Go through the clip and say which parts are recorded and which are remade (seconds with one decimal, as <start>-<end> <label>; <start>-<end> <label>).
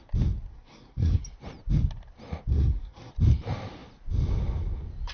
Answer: 0.0-0.5 recorded; 0.5-1.2 remade; 1.2-2.5 recorded; 2.5-3.1 remade; 3.1-5.1 recorded